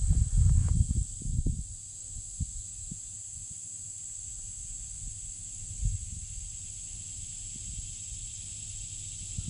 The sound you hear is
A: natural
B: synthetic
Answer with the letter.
A